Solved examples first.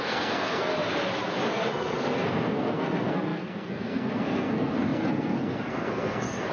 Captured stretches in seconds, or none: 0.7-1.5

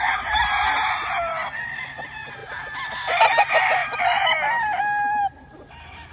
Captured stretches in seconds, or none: 0.0-6.1

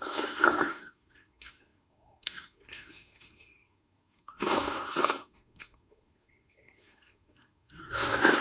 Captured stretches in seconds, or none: none

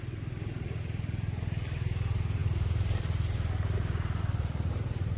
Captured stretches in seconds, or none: 0.0-5.2

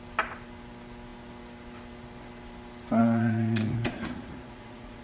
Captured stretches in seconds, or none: 0.0-3.0

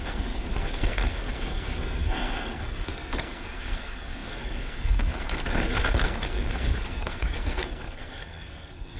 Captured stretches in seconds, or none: none

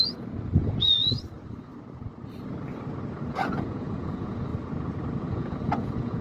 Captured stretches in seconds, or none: 1.7-3.3; 4.5-5.3

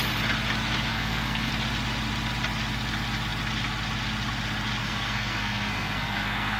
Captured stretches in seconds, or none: 0.0-0.9; 1.5-4.8